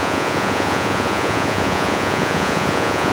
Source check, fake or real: fake